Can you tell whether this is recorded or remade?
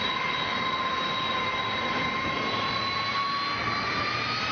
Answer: recorded